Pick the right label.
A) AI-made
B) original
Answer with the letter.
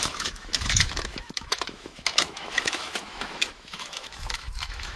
A